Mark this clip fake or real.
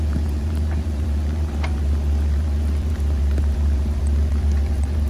fake